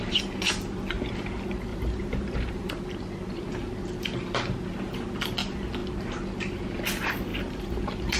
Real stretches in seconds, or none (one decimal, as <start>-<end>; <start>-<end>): 0.0-1.7; 2.7-7.3